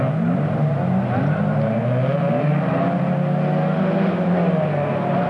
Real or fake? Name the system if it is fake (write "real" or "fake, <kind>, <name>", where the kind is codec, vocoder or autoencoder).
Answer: real